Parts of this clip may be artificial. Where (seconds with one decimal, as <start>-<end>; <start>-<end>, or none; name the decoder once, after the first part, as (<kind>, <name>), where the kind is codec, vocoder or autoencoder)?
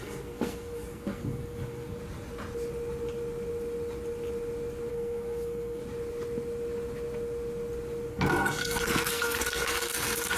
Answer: 0.0-2.0 (codec, SNAC); 4.9-5.8; 8.1-10.4